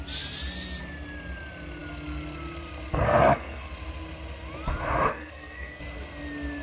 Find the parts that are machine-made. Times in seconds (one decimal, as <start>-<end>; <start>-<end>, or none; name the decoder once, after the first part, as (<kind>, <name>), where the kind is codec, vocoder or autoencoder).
2.9-3.7 (codec, SNAC); 5.1-5.8